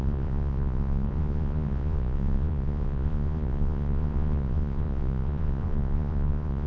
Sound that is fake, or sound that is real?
fake